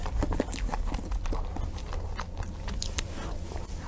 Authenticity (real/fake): real